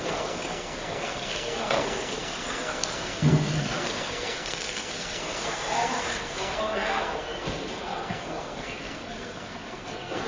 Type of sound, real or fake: fake